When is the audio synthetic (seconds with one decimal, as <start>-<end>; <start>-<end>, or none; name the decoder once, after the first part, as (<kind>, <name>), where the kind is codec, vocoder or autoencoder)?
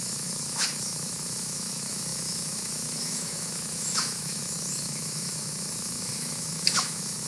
0.0-7.3 (autoencoder, DAC-VAE)